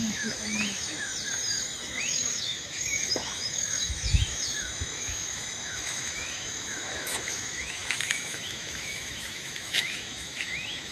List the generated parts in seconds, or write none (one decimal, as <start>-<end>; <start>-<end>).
0.0-1.1; 2.0-10.9